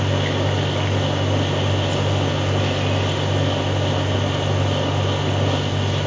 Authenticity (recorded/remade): recorded